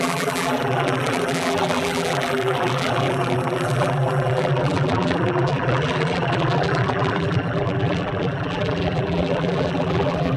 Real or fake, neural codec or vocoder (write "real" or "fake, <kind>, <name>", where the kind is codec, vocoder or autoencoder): fake, vocoder, BigVGAN v2